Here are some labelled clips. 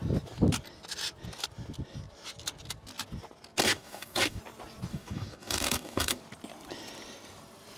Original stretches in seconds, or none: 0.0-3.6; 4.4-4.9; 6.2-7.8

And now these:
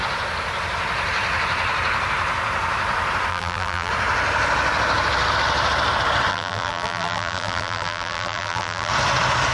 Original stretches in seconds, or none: 0.0-3.3; 3.9-6.3; 8.9-9.5

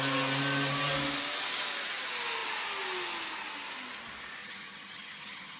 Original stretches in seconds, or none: 0.0-4.4